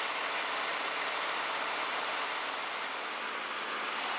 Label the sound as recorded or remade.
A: remade